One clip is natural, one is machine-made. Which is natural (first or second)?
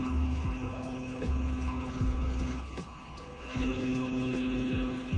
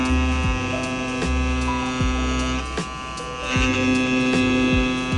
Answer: second